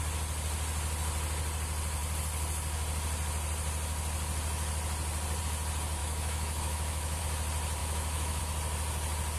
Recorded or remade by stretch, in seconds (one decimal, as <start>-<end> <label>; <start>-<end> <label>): 0.0-6.0 recorded; 6.0-7.2 remade; 7.2-7.8 recorded; 7.8-8.4 remade; 8.4-9.4 recorded